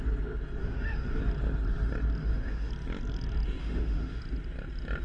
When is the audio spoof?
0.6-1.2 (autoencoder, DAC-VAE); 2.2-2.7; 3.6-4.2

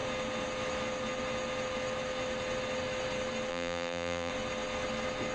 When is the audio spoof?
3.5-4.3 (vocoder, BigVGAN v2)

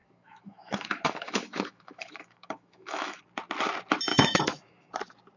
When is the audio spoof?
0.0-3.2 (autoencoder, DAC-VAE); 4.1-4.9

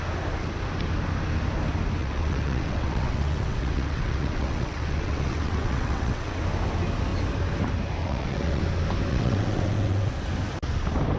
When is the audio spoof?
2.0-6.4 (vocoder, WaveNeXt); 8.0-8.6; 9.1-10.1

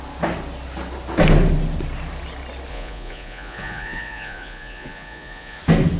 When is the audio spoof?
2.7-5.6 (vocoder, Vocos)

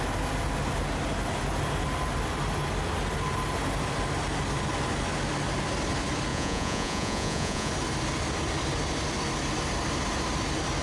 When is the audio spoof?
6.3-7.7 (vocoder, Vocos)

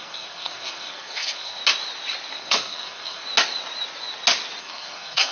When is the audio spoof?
0.0-1.6 (codec, SNAC); 2.3-3.2; 4.6-5.3

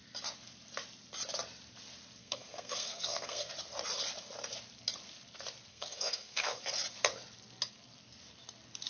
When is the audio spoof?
2.2-3.5 (codec, SNAC); 5.7-6.6